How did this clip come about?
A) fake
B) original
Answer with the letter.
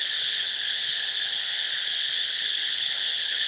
A